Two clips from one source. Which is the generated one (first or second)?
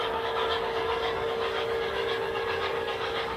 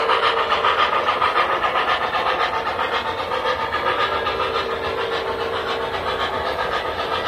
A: first